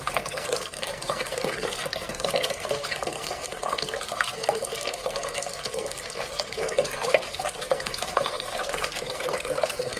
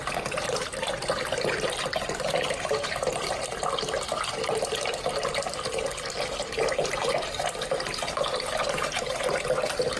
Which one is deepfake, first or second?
first